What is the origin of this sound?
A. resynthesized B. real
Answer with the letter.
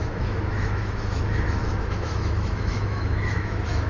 A